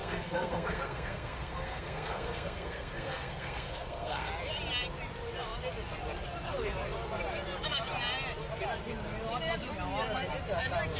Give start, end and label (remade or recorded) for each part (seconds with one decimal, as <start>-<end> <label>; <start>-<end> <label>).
0.0-4.3 remade; 4.3-11.0 recorded